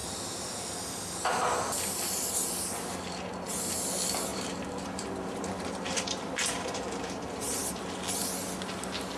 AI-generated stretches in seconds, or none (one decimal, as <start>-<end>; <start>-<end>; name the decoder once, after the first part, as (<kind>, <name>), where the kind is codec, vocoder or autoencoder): 4.3-7.6 (vocoder, BigVGAN v2)